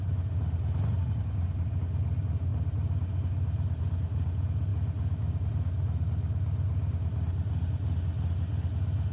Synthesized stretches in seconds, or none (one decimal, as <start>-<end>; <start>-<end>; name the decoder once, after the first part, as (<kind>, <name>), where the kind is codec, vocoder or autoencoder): none